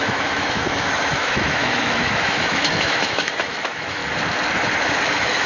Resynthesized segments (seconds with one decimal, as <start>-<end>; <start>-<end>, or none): 0.0-4.0; 5.1-5.5